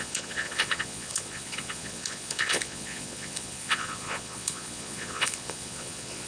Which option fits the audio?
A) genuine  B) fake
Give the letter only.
B